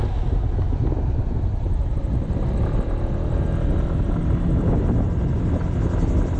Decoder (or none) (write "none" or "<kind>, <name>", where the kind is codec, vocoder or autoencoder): none